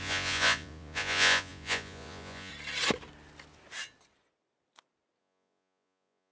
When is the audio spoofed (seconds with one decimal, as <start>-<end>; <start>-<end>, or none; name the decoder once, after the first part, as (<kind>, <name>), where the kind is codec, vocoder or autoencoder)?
0.0-2.5 (vocoder, Vocos); 5.2-6.3